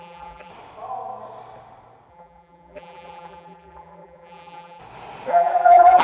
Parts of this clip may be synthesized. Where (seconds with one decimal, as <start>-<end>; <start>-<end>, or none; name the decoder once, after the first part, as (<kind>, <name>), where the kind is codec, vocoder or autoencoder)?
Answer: 0.0-0.5 (vocoder, BigVGAN v2); 2.1-4.8; 5.3-6.0